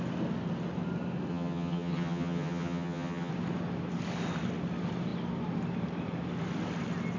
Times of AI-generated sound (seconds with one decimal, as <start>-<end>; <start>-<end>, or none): 1.3-3.3